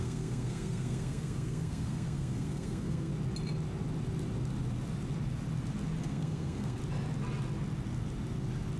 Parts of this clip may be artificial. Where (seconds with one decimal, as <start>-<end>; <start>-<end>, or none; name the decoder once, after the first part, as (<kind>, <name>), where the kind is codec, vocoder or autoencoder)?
0.0-3.1 (codec, SNAC); 6.0-6.8